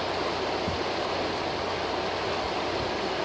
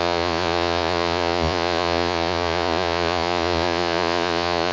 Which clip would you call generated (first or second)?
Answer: second